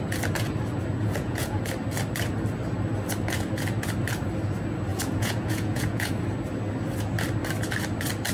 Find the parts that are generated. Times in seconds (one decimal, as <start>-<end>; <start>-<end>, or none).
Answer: 1.0-1.6; 4.9-6.1

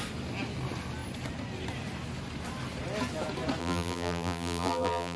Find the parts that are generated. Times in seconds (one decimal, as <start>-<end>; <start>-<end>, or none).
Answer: 3.6-5.2

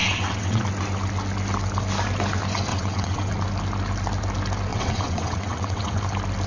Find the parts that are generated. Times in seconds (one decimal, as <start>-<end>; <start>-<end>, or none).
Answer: 0.0-0.6; 2.7-3.3; 4.7-6.0

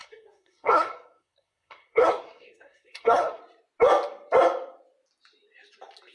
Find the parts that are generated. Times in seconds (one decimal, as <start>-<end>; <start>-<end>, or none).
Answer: 0.0-3.4

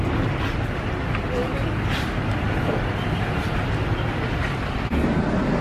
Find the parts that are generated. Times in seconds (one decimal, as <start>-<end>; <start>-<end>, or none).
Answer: none

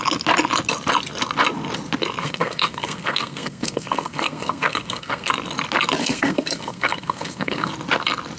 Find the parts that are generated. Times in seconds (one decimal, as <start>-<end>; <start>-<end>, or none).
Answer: 2.2-5.3; 6.0-7.7